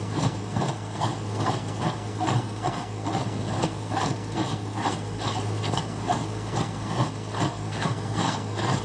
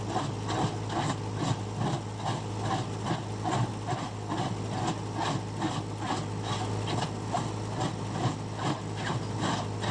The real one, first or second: second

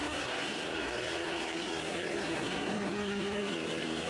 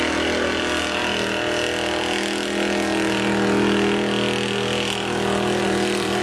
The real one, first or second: second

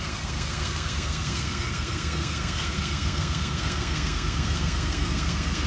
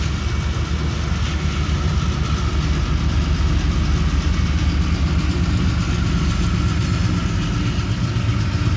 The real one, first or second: second